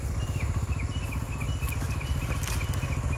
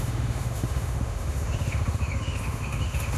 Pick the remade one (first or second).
second